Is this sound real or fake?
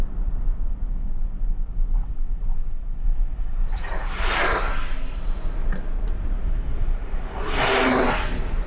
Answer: fake